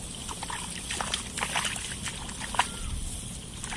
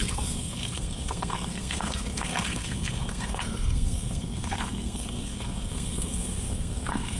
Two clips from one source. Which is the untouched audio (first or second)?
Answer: first